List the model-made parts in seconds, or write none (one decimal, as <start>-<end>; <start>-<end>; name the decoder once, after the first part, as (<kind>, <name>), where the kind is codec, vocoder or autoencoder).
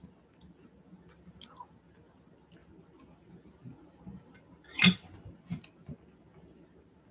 none